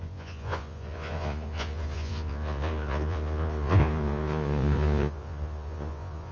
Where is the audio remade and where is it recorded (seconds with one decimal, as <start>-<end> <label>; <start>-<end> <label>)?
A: 0.0-6.3 remade

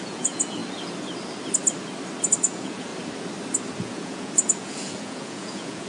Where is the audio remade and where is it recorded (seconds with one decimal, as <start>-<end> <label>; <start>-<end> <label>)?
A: 0.0-0.6 remade; 0.6-2.4 recorded; 2.4-2.9 remade; 2.9-3.8 recorded; 3.8-5.9 remade

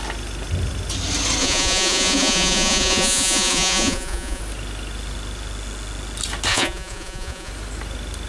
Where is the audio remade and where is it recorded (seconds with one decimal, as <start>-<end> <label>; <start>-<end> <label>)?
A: 0.0-1.4 recorded; 1.4-4.4 remade; 4.4-6.5 recorded; 6.5-7.5 remade; 7.5-8.3 recorded

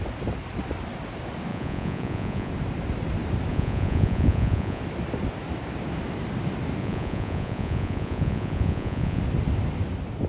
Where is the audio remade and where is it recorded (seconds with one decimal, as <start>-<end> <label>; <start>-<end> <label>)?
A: 0.0-1.5 recorded; 1.5-2.5 remade; 2.5-3.5 recorded; 3.5-4.8 remade; 4.8-6.8 recorded; 6.8-9.2 remade; 9.2-10.3 recorded

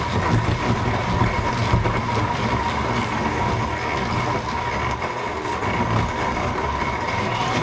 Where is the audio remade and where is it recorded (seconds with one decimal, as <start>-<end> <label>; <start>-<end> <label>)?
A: 0.0-7.6 recorded

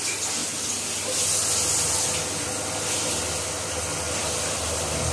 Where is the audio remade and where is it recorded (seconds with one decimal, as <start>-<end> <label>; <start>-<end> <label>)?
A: 0.0-5.1 recorded

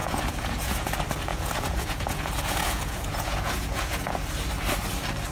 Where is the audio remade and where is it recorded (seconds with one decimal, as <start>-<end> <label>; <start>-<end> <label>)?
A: 0.0-0.9 remade; 0.9-1.3 recorded; 1.3-4.2 remade; 4.2-5.3 recorded